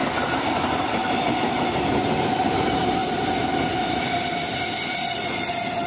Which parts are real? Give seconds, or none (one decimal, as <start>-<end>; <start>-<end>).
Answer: 0.0-5.9